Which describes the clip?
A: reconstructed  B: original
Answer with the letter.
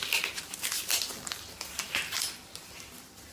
B